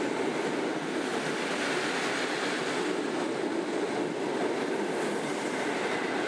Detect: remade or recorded recorded